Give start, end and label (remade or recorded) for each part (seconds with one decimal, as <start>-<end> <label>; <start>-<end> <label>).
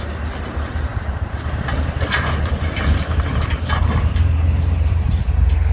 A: 0.0-5.2 remade; 5.2-5.7 recorded